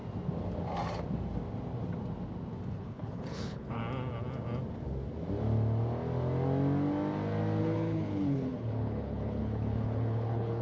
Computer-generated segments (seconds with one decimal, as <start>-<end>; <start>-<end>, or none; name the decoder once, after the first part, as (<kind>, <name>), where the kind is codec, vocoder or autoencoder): 2.7-3.8 (codec, HILCodec); 7.6-10.6